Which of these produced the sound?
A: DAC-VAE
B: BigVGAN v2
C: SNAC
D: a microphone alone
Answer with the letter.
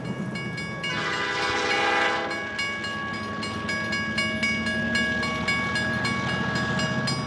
D